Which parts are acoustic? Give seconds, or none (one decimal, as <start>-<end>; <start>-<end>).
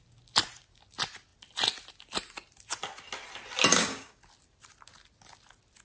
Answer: 0.0-3.7; 4.2-5.8